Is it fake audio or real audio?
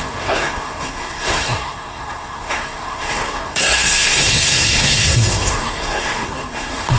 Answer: fake